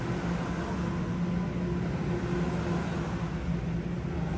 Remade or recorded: recorded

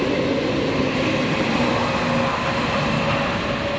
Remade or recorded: recorded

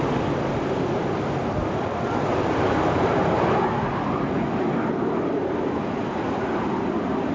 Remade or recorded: recorded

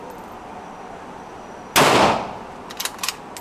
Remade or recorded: recorded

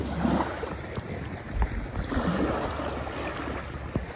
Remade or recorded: recorded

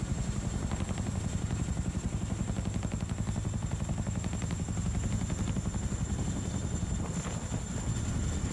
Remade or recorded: recorded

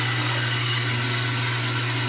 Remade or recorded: recorded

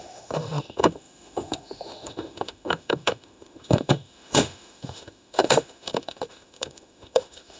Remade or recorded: remade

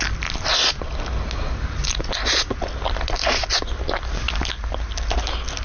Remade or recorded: recorded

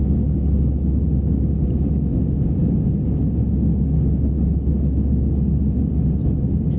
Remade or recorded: recorded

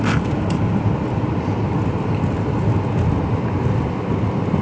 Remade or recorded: recorded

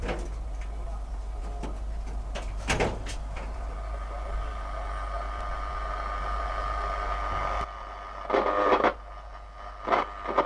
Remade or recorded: recorded